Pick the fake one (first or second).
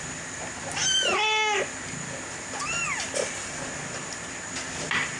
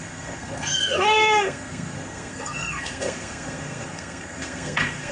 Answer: second